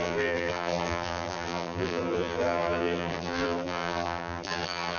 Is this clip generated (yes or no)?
yes